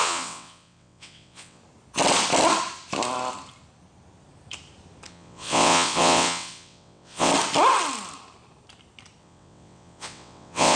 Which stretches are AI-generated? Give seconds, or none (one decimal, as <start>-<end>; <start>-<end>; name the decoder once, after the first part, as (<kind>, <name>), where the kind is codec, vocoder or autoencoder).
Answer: 0.0-1.6 (vocoder, WaveNeXt); 5.1-7.3; 9.2-10.8